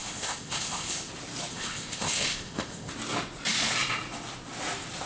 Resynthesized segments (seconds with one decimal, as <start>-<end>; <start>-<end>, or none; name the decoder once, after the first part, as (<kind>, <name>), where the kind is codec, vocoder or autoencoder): 0.0-1.1 (codec, ZipCodec); 1.5-2.9